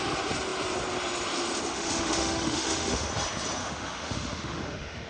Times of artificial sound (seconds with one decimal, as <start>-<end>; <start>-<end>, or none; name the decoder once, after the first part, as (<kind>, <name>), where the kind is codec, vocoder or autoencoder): 1.7-3.1 (autoencoder, DAC-VAE); 3.6-5.1